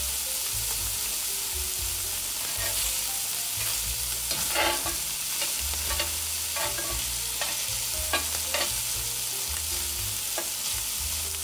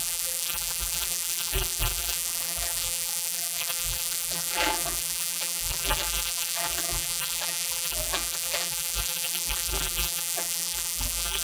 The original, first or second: first